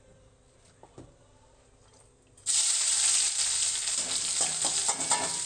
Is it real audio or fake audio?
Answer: real